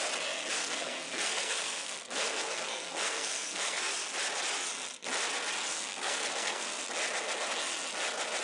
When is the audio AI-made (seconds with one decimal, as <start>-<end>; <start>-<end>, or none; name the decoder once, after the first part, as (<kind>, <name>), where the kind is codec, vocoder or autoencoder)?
0.6-3.9 (codec, SNAC); 5.7-6.8